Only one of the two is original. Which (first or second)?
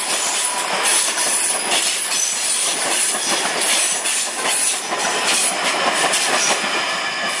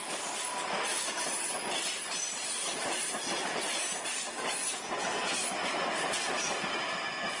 second